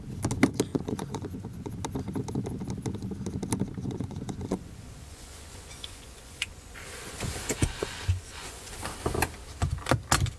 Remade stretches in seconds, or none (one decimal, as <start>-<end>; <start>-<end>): 0.7-1.7; 3.8-8.7